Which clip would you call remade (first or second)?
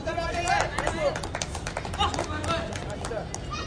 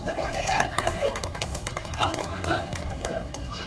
second